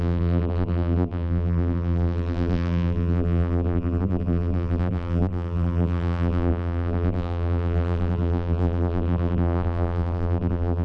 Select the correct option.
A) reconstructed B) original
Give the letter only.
A